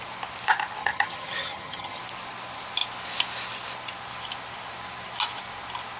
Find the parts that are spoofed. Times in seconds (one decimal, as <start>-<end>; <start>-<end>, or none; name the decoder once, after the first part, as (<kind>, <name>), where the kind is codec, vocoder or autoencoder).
0.8-2.0 (vocoder, HiFi-GAN)